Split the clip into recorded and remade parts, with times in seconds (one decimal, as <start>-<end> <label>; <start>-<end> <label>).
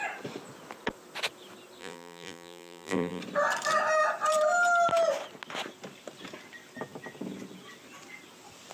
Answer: 0.0-1.8 recorded; 1.8-3.2 remade; 3.2-8.7 recorded